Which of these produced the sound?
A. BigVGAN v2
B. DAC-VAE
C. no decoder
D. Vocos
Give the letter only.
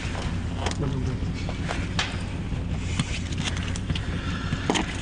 C